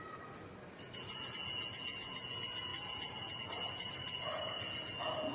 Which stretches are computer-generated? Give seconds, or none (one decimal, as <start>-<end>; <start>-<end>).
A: none